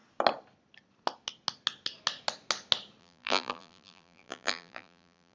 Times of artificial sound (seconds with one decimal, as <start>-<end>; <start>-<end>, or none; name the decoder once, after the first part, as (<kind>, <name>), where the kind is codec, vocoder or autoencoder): 3.0-5.3 (vocoder, BigVGAN v2)